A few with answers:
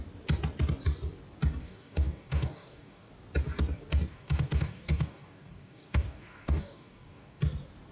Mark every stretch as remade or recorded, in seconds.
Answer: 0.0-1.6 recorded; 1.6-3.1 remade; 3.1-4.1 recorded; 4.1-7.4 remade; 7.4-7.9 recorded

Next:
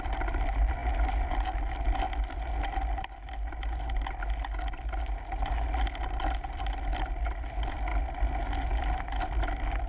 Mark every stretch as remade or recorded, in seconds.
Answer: 0.0-9.9 recorded

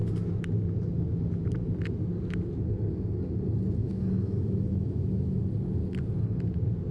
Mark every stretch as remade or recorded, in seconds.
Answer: 0.0-3.8 recorded; 3.8-5.4 remade; 5.4-6.9 recorded

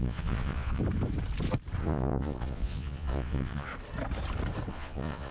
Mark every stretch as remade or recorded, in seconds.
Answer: 0.0-0.8 remade; 0.8-1.8 recorded; 1.8-3.7 remade; 3.7-4.7 recorded; 4.7-5.3 remade

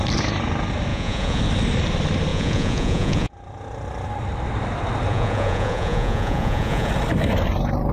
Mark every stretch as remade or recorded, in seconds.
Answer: 0.0-0.9 recorded; 0.9-1.4 remade; 1.4-2.3 recorded; 2.3-3.3 remade; 3.3-5.1 recorded; 5.1-6.9 remade; 6.9-7.9 recorded

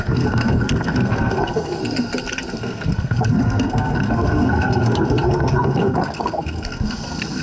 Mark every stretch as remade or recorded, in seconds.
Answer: 0.0-1.8 remade; 1.8-2.5 recorded; 2.5-7.4 remade

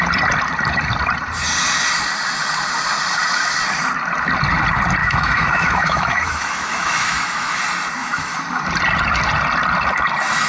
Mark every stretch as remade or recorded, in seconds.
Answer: 0.0-5.0 recorded; 5.0-7.6 remade; 7.6-8.0 recorded; 8.0-8.6 remade; 8.6-10.5 recorded